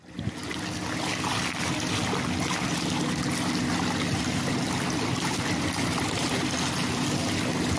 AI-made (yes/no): no